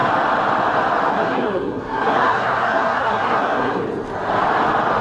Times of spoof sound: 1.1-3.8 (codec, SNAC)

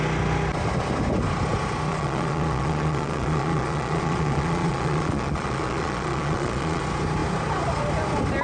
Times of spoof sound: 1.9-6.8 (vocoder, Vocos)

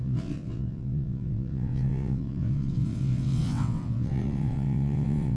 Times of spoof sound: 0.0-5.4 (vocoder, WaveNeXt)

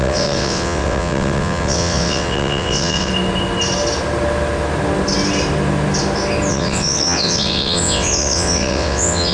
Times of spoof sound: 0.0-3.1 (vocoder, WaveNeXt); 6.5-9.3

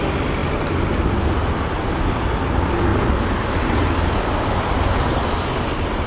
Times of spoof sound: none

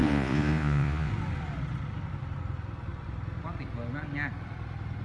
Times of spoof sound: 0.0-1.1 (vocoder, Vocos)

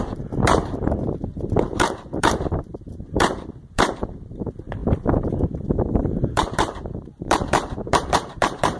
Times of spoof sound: 0.0-4.8 (vocoder, BigVGAN v2); 5.3-8.8